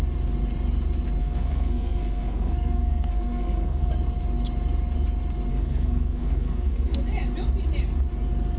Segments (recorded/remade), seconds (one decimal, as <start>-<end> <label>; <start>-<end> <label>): 0.0-1.2 recorded; 1.2-3.9 remade; 3.9-5.5 recorded; 5.5-7.0 remade; 7.0-8.6 recorded